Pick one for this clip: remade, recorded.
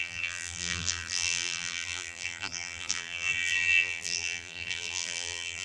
remade